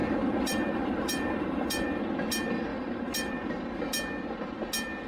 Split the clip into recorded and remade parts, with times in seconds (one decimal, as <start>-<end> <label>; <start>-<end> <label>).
0.0-2.0 remade; 2.0-2.7 recorded; 2.7-3.3 remade; 3.3-5.1 recorded